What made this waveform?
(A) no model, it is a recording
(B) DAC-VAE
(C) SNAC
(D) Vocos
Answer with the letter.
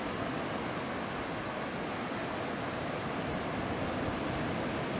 A